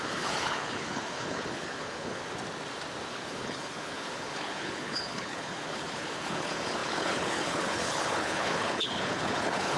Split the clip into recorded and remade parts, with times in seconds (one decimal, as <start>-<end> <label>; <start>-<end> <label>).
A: 0.0-2.2 remade; 2.2-3.1 recorded; 3.1-9.8 remade